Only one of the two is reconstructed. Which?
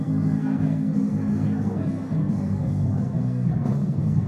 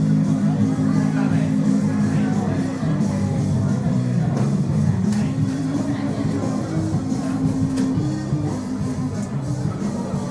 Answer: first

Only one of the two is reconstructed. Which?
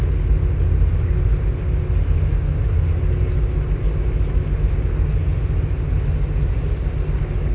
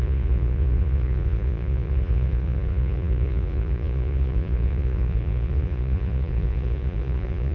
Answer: second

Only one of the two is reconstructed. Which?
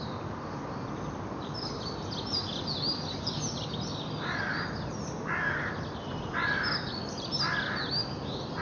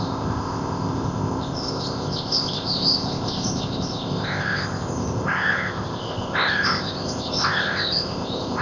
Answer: second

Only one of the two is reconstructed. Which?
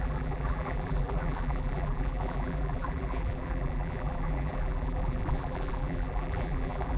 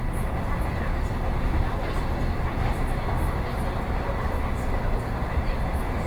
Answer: first